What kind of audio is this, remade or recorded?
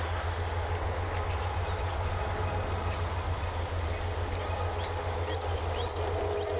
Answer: recorded